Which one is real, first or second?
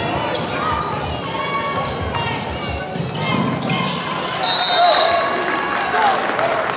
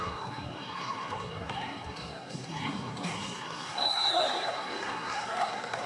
first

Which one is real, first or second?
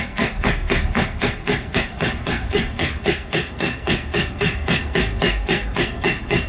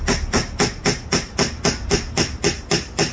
second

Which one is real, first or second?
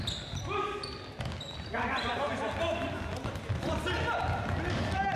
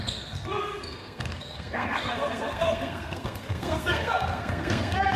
first